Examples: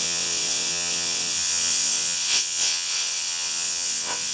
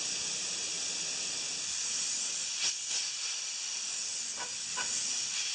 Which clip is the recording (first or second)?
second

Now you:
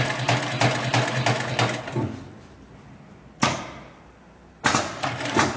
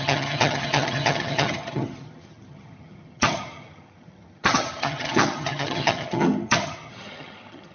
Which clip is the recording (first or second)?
first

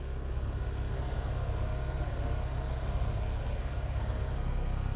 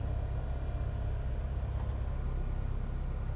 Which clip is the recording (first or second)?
second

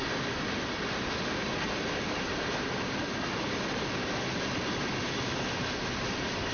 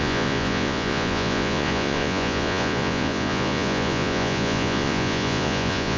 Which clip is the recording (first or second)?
first